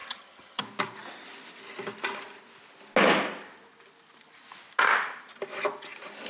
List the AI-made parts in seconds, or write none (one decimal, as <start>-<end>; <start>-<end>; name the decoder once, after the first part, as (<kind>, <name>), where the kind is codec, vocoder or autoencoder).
0.0-0.6 (vocoder, HiFi-GAN)